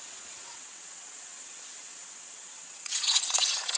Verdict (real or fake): fake